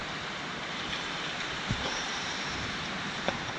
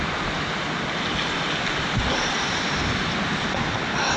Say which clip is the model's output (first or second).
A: first